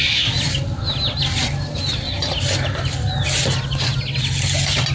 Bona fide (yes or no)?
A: yes